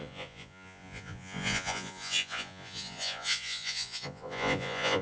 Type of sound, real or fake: fake